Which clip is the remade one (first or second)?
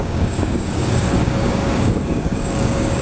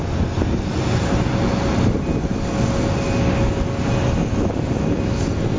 first